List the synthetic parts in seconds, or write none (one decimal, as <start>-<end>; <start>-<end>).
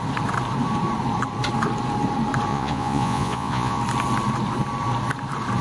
2.5-3.8